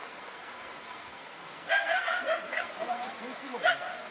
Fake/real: fake